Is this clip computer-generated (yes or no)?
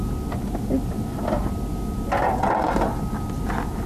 no